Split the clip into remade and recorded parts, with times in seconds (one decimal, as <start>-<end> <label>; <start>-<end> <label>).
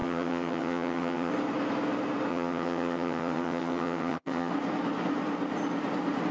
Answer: 0.0-1.3 remade; 1.3-2.3 recorded; 2.3-4.5 remade; 4.5-6.3 recorded